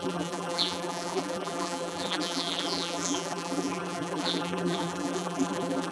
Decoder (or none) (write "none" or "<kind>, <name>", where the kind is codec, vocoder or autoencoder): vocoder, BigVGAN v2